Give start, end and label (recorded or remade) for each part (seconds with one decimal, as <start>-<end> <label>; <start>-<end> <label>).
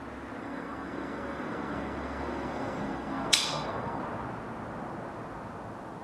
0.0-0.4 recorded; 0.4-4.0 remade; 4.0-6.0 recorded